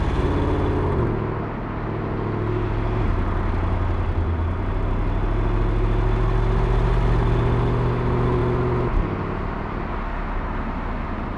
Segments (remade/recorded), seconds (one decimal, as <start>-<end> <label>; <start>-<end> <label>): 0.0-11.4 recorded

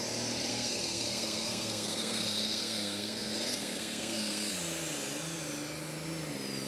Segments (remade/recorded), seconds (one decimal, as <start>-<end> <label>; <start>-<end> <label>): 0.0-0.5 recorded; 0.5-4.5 remade; 4.5-6.7 recorded

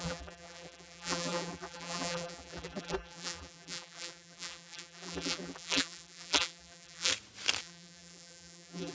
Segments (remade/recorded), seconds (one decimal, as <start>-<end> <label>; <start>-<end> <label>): 0.0-7.1 remade; 7.1-7.6 recorded; 7.6-8.9 remade